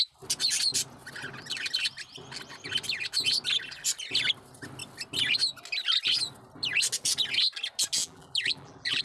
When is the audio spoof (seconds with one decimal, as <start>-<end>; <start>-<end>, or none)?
8.0-9.0